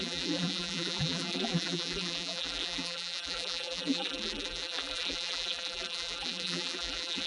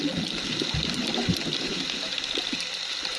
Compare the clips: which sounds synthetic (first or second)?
first